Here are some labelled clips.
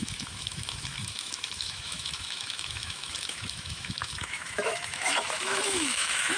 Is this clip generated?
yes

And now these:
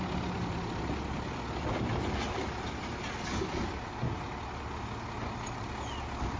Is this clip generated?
no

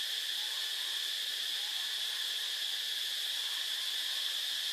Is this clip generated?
no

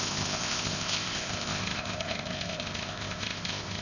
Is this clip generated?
yes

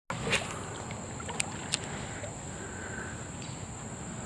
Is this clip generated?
no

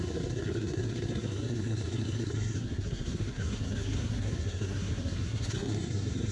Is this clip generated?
yes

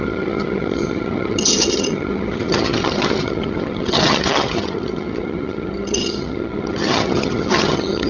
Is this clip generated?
yes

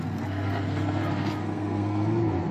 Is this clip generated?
yes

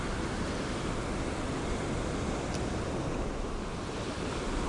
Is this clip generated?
no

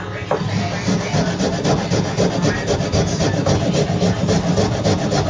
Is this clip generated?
no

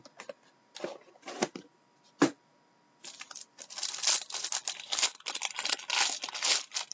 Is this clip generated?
no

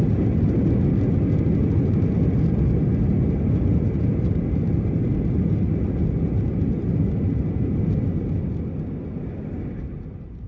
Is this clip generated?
no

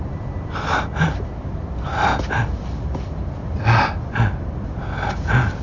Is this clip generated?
no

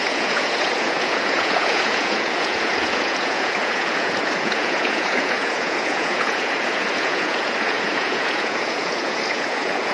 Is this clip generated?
yes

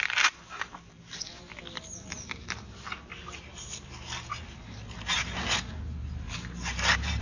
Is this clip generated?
yes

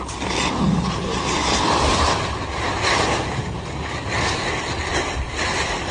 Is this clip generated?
no